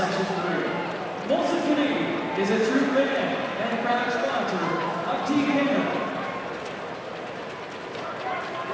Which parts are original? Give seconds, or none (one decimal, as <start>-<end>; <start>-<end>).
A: 0.0-8.7